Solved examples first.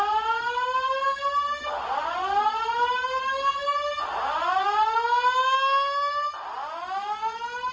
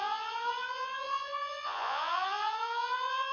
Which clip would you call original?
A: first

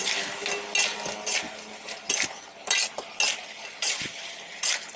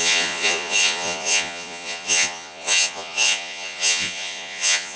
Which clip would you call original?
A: first